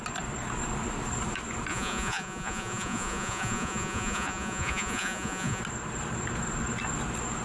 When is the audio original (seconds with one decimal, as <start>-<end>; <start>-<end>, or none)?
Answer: 0.0-1.7; 5.6-7.4